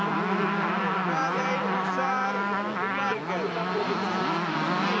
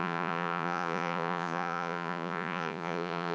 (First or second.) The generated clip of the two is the second